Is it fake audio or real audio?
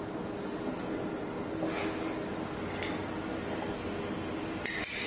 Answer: real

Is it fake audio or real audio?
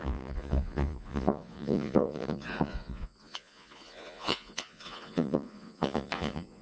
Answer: fake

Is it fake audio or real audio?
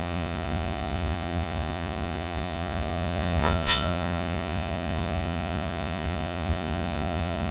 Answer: fake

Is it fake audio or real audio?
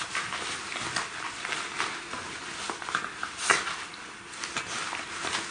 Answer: real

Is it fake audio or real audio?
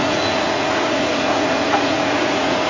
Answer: fake